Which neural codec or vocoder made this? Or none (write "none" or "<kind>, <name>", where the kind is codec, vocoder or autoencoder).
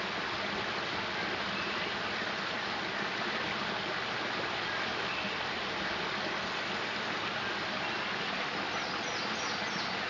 none